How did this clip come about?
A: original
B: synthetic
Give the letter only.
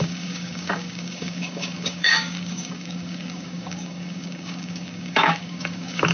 B